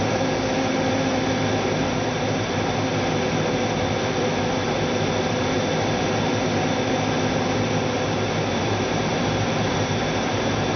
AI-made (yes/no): no